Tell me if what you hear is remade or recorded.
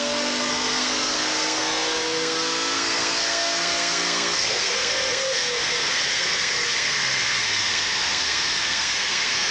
remade